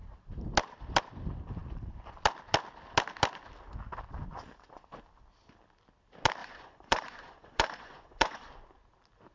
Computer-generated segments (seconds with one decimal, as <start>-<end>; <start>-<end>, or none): 6.4-8.5

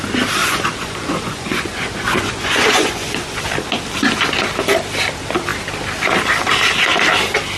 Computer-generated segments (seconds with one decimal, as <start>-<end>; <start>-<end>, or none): 0.4-3.4

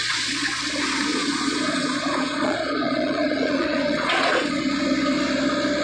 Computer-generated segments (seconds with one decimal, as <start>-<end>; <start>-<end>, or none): 0.0-0.6; 1.1-4.6

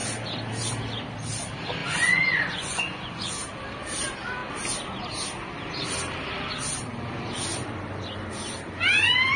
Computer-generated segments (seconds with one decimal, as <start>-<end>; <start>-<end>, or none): 1.8-3.3